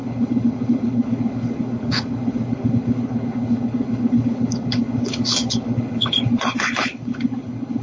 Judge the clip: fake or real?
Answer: fake